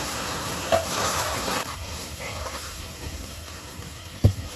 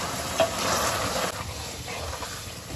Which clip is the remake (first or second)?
first